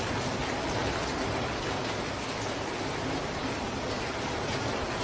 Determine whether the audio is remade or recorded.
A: recorded